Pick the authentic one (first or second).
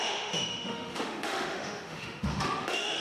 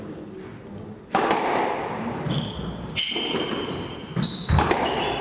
second